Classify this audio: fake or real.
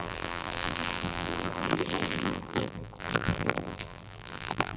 fake